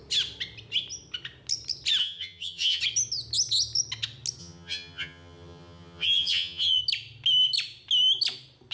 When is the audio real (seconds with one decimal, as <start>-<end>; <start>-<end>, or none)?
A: 0.0-2.0; 2.8-4.4; 6.8-8.7